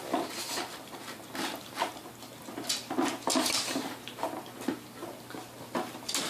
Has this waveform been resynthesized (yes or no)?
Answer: no